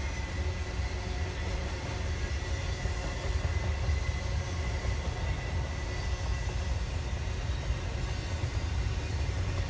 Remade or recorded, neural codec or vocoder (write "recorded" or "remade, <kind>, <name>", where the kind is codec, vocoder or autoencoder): recorded